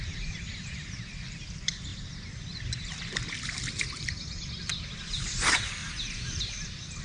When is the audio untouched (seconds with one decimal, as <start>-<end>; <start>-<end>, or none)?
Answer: 1.9-4.6; 5.8-7.0